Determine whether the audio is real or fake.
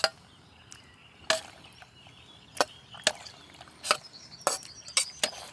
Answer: real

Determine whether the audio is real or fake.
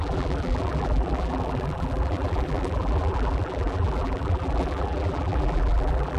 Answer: fake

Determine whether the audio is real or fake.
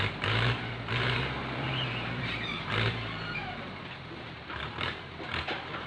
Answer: fake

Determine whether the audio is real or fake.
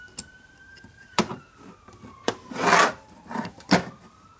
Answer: fake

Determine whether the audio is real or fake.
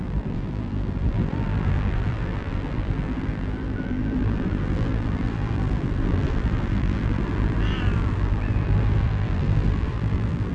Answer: fake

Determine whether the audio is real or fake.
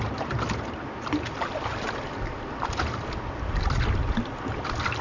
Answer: real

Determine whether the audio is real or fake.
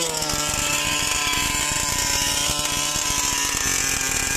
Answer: real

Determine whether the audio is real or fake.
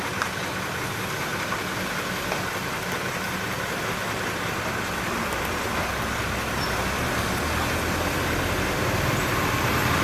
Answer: real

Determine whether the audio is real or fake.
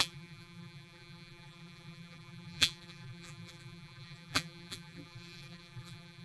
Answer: fake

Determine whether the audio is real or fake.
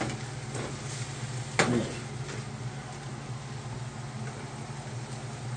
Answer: real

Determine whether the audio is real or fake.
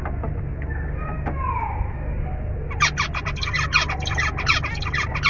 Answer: real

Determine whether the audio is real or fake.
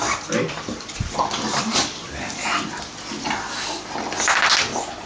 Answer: real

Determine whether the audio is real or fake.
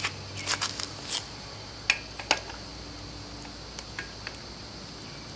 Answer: real